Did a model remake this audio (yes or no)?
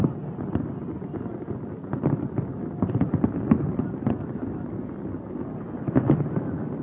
no